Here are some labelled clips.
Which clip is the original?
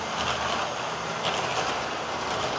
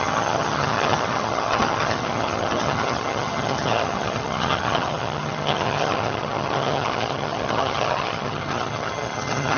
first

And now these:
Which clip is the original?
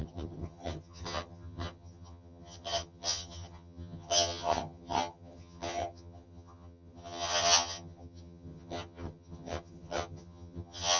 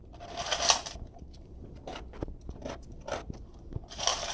second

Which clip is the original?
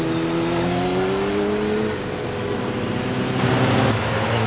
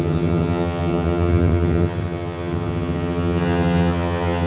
first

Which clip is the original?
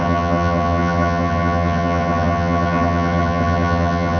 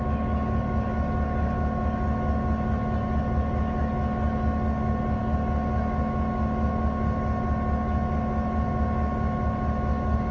second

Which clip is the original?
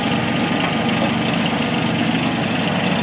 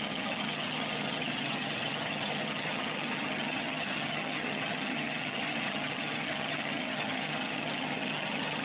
first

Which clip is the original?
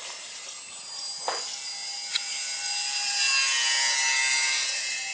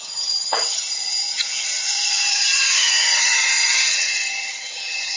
first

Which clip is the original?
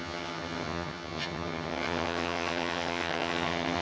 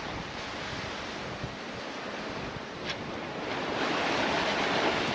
second